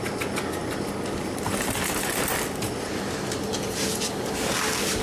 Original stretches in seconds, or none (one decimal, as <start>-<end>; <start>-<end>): 0.0-5.0

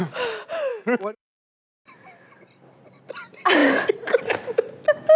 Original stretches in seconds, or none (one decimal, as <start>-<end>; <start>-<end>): 0.0-0.7; 1.4-5.2

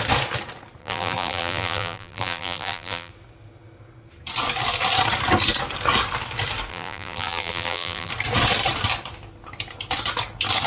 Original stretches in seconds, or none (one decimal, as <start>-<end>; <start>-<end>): 0.0-0.8; 3.1-6.7; 8.1-10.7